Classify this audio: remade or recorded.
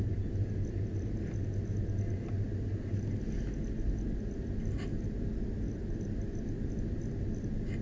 recorded